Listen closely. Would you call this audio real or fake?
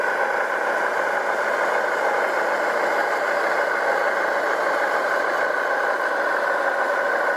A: real